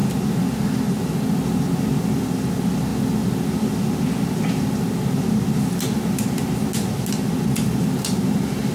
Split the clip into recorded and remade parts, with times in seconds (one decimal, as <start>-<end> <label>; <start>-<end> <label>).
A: 0.0-8.7 recorded